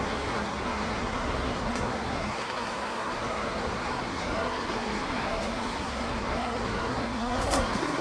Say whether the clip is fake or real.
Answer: fake